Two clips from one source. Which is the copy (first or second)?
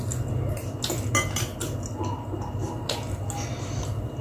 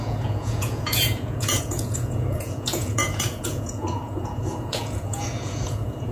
second